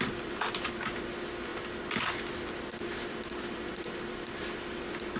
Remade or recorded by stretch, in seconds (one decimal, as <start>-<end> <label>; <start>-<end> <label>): 0.0-5.2 recorded